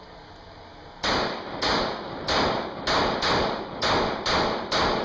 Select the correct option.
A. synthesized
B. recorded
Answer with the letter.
B